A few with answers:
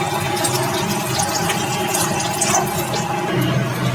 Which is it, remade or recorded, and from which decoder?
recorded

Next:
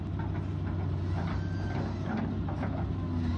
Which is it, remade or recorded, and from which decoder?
recorded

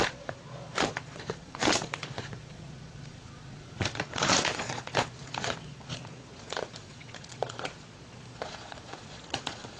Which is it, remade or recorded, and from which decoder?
remade, vocoder, Vocos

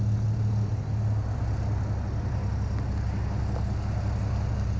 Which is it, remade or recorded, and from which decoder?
recorded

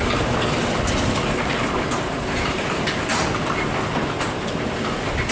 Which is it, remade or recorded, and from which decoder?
recorded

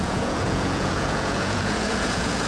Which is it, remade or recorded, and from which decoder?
remade, vocoder, Vocos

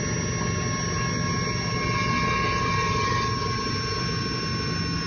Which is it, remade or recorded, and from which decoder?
recorded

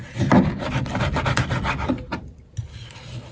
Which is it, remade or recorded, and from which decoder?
recorded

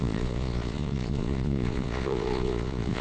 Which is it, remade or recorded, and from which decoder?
remade, vocoder, Vocos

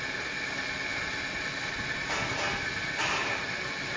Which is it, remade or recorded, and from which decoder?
recorded